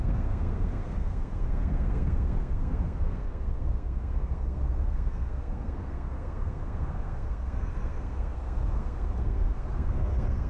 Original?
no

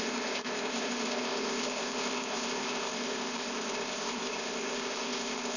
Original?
no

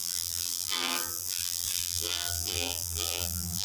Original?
no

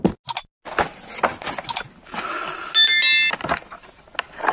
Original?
yes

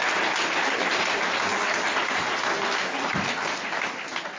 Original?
yes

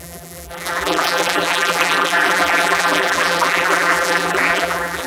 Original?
no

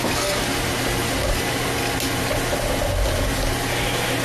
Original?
yes